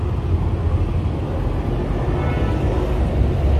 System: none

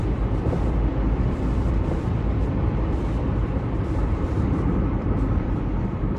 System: vocoder, BigVGAN v2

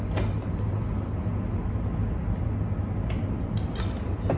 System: none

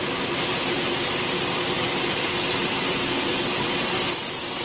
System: none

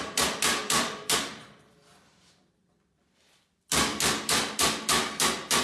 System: vocoder, BigVGAN v2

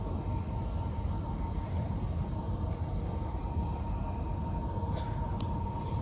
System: none